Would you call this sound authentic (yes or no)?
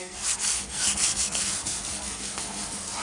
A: no